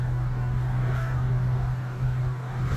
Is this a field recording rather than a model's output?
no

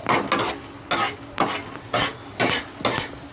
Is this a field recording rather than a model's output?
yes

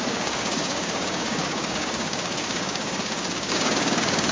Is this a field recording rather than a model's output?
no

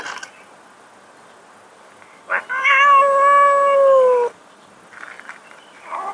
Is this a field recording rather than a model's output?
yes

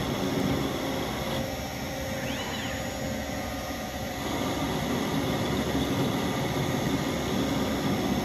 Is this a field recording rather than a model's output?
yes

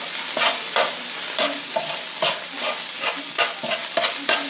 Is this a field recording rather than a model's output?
yes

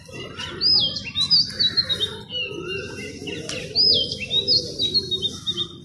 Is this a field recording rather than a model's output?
yes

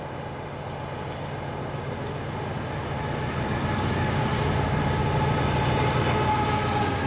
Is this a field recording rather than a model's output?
yes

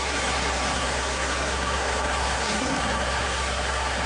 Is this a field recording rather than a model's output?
no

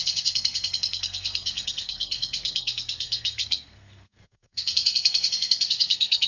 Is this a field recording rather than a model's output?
no